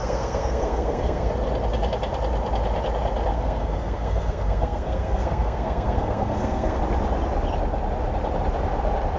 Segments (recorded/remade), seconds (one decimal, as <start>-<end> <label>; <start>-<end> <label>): 0.0-1.3 remade; 1.3-3.3 recorded; 3.3-6.8 remade; 6.8-9.2 recorded